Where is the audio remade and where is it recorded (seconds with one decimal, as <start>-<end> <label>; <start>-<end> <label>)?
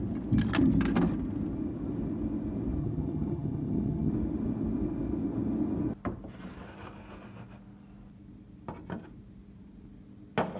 0.0-2.8 recorded; 2.8-4.1 remade; 4.1-10.6 recorded